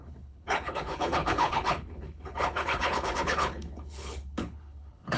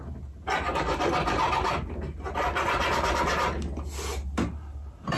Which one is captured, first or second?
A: second